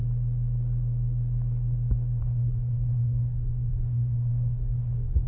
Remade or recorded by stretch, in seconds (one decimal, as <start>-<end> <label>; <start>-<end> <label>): 0.0-2.2 recorded; 2.2-5.3 remade